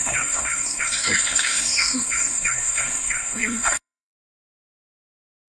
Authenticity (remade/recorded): remade